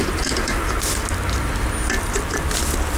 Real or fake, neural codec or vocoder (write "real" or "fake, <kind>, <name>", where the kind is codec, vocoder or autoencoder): real